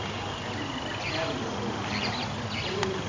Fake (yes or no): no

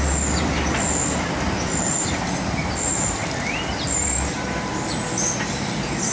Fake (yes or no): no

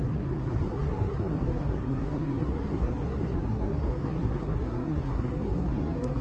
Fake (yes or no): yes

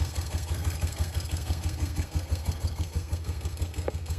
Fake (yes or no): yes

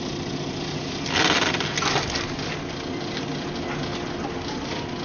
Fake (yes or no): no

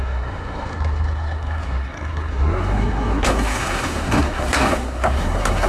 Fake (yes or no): yes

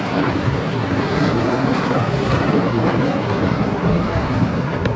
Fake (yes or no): yes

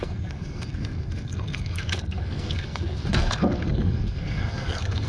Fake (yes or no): yes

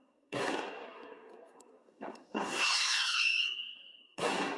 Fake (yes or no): yes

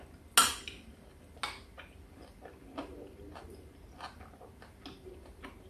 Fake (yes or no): no